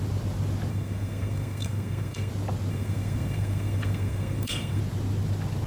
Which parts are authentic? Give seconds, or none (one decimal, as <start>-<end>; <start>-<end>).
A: 0.0-0.7; 2.3-2.7; 4.8-5.7